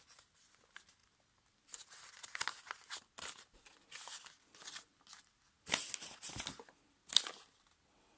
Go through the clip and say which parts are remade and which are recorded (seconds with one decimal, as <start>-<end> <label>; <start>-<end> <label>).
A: 0.0-8.2 recorded